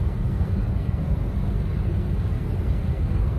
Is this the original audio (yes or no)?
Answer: no